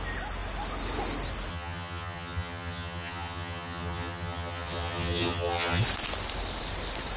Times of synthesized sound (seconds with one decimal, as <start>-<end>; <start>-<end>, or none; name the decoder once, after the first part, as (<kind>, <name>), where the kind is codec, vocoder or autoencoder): 1.5-5.8 (vocoder, HiFi-GAN)